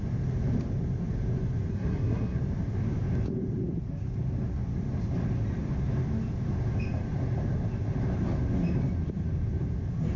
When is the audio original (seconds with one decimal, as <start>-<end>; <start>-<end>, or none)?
0.0-1.7; 2.4-10.2